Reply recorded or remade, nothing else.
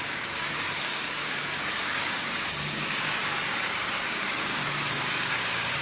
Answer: remade